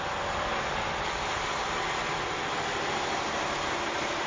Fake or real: real